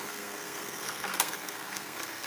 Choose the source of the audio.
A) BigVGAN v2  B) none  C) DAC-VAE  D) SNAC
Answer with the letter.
D